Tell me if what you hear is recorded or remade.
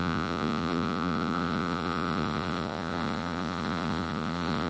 remade